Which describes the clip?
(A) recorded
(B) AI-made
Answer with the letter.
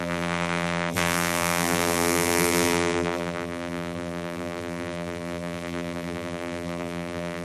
B